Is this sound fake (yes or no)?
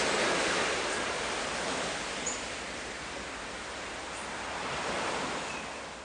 yes